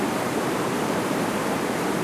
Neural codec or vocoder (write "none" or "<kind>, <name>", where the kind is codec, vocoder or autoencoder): vocoder, BigVGAN v2